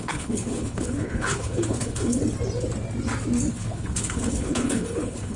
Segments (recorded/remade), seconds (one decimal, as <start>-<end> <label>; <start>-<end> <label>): 0.0-2.2 remade; 2.2-3.5 recorded; 3.5-5.4 remade